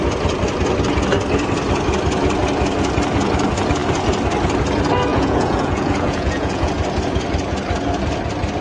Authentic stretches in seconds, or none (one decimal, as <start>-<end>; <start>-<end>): 0.0-5.1; 6.7-8.6